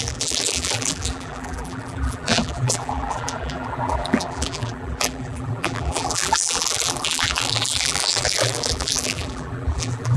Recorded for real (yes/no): no